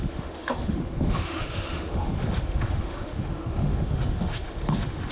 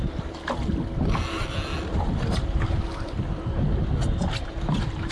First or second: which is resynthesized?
first